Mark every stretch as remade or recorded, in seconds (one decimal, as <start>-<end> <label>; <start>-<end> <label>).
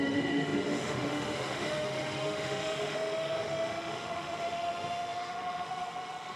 0.0-6.4 remade